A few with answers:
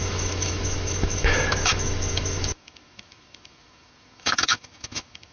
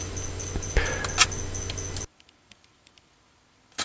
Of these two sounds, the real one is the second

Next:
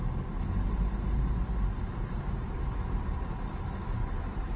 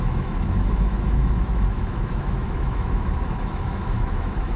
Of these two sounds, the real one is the first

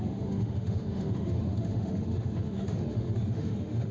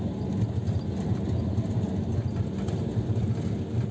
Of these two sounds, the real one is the second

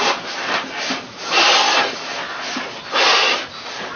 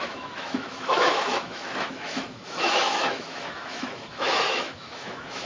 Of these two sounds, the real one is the first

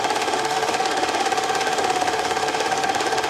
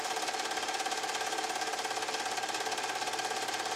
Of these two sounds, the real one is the second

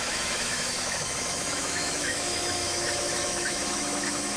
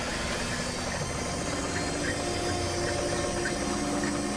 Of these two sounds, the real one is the second